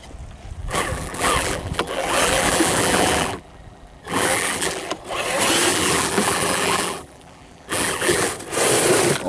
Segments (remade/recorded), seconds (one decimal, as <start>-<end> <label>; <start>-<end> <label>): 0.0-0.6 recorded; 0.6-4.9 remade; 4.9-5.7 recorded; 5.7-8.3 remade; 8.3-9.3 recorded